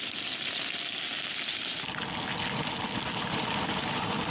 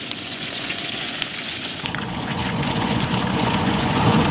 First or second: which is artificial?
second